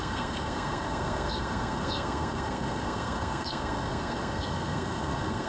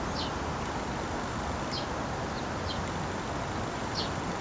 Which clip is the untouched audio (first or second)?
second